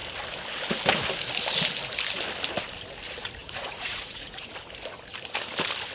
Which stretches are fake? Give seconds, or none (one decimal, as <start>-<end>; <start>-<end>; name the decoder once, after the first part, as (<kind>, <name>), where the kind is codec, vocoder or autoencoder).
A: 3.4-4.5 (vocoder, Vocos)